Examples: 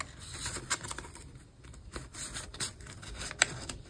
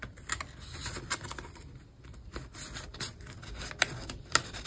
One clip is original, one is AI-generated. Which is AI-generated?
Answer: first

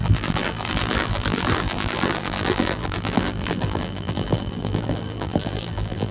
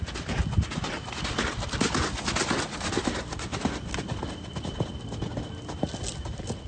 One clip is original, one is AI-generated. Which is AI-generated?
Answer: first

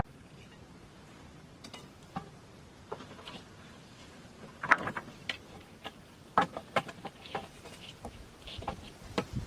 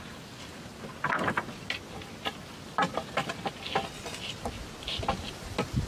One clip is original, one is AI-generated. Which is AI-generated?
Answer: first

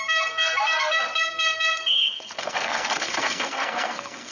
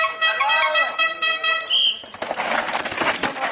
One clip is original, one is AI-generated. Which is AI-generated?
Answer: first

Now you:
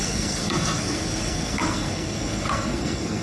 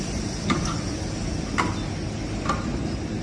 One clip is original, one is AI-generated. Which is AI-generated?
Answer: first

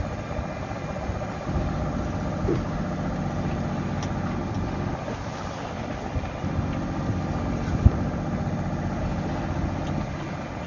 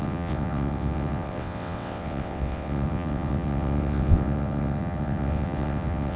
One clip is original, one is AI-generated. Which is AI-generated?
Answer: second